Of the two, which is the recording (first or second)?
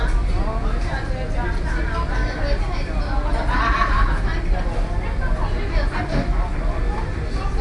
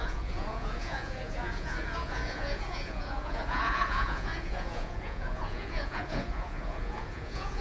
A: first